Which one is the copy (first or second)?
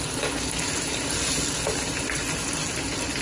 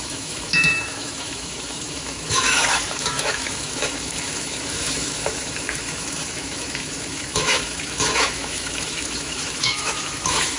second